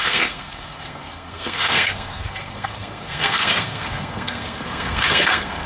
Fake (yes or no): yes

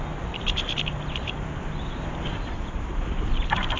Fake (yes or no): yes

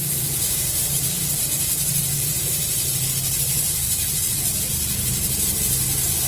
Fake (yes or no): yes